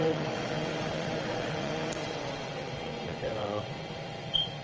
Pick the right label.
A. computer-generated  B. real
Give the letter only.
A